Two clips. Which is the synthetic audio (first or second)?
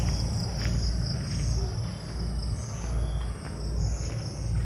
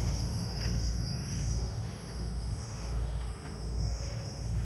second